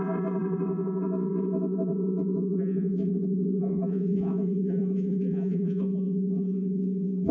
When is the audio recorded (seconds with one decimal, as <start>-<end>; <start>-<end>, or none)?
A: none